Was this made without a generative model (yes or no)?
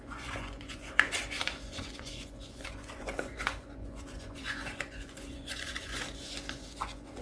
no